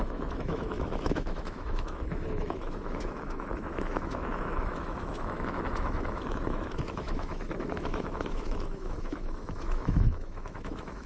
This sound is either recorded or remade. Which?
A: remade